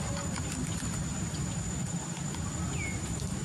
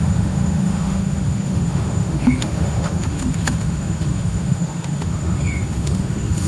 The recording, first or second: first